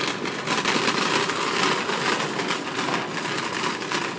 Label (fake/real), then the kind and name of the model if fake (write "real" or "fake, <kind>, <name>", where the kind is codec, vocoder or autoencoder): real